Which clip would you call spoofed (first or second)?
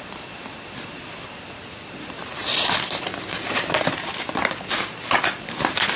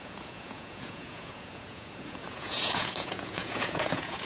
second